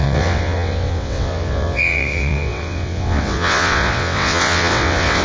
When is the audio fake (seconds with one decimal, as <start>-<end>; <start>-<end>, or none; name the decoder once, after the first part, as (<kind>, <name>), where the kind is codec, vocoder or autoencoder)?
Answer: 0.0-5.2 (vocoder, WaveNeXt)